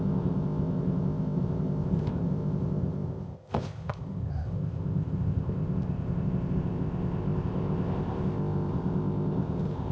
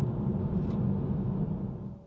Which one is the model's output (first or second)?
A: first